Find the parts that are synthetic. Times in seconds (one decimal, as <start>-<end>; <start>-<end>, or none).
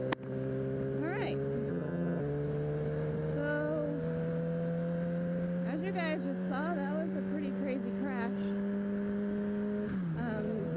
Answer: 1.7-2.2